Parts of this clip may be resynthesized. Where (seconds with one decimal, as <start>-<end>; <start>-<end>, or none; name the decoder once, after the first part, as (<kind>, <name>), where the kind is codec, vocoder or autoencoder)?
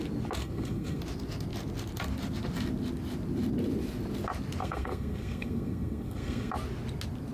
0.4-1.0 (codec, SNAC); 4.6-6.5